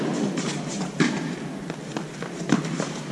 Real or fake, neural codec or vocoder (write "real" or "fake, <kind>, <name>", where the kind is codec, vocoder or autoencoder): real